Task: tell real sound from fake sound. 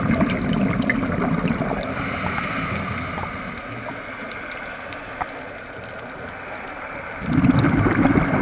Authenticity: real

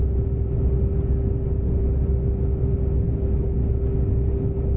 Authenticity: real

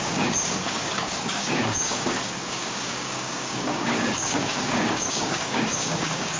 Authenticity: fake